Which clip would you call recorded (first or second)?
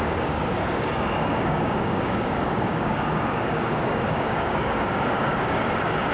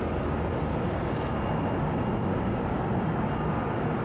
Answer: second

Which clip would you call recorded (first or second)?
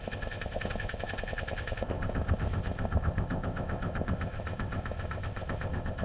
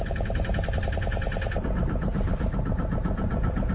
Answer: second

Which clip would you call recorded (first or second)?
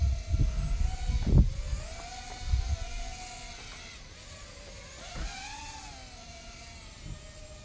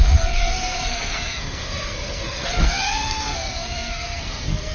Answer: first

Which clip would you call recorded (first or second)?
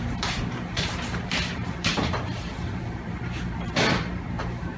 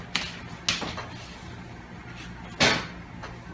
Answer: second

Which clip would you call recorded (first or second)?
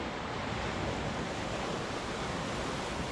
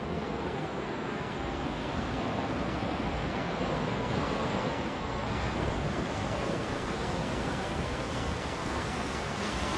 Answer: first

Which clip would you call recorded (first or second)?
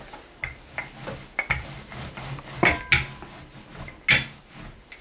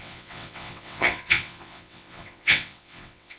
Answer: first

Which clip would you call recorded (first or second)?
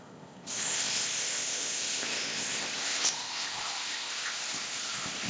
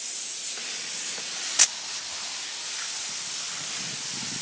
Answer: second